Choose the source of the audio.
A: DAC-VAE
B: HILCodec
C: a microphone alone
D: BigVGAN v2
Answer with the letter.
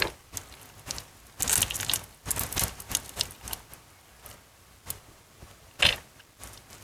C